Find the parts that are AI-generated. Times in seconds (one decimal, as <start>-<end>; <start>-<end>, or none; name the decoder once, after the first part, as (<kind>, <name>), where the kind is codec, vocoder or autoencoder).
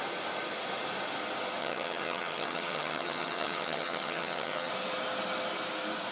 1.6-4.7 (vocoder, HiFi-GAN)